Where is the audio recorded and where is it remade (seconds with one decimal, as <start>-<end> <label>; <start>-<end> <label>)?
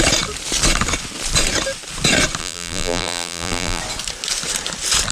0.0-2.4 recorded; 2.4-3.8 remade; 3.8-5.1 recorded